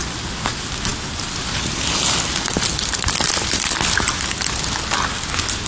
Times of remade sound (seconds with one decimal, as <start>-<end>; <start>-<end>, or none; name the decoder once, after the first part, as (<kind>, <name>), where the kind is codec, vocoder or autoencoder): none